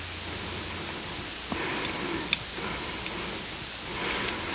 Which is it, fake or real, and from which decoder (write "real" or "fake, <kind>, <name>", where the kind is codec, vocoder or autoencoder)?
real